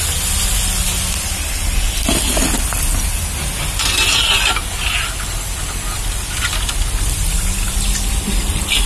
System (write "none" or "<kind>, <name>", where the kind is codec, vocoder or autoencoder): none